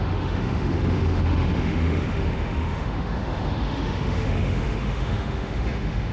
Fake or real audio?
fake